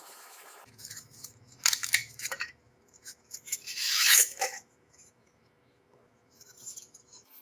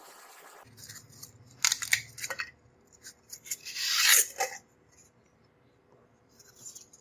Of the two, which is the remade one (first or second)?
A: first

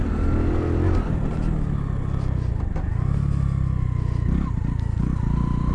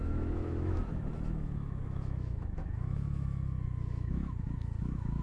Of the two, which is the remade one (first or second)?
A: second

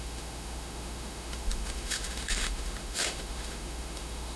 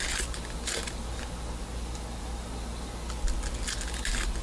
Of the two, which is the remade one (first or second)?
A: first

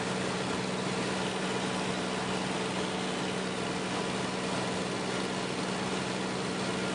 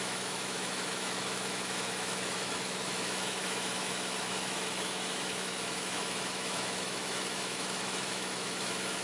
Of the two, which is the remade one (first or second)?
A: second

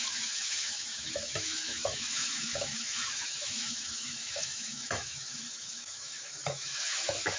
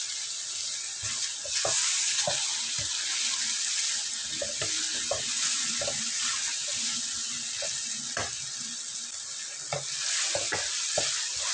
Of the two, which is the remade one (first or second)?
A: first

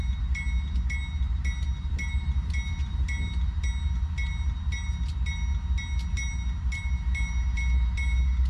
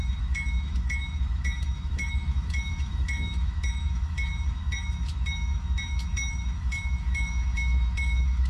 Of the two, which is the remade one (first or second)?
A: second